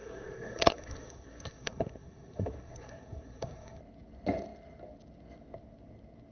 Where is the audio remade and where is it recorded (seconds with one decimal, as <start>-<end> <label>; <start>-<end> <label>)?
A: 0.0-3.8 remade; 3.8-6.3 recorded